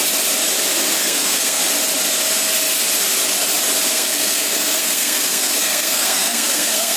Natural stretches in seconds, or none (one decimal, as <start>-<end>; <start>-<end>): 0.0-1.0; 1.6-3.9